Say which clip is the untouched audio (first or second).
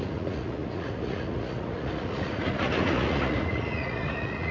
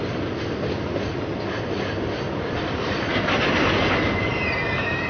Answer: second